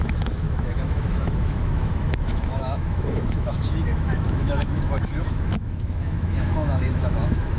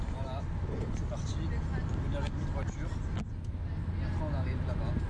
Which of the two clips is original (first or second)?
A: second